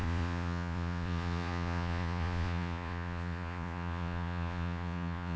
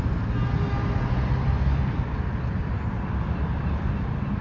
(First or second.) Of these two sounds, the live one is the second